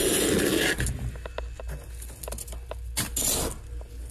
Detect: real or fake real